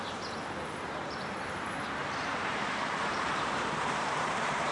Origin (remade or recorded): remade